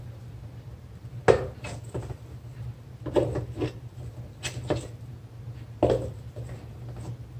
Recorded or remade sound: recorded